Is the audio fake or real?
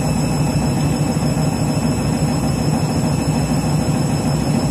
real